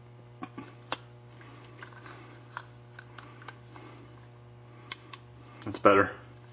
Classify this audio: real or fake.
real